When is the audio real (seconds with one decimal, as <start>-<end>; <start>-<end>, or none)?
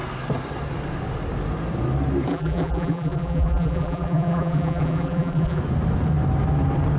0.0-2.3; 5.6-7.0